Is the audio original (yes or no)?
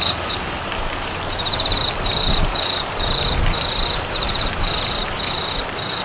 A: no